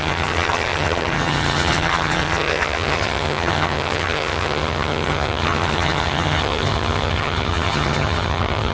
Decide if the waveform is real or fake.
fake